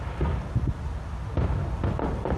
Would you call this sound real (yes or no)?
yes